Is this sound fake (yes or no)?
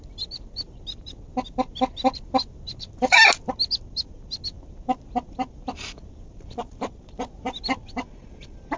no